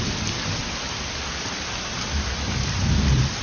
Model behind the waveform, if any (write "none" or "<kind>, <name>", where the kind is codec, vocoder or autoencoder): none